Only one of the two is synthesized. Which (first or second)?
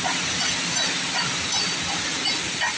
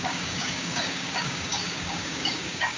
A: second